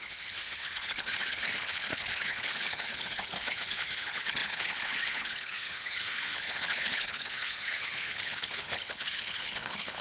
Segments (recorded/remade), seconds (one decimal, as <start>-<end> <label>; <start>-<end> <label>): 0.0-10.0 remade